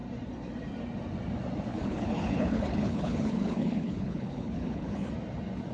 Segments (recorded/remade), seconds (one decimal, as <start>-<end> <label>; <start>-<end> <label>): 0.0-1.7 recorded; 1.7-5.1 remade; 5.1-5.7 recorded